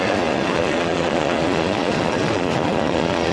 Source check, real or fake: fake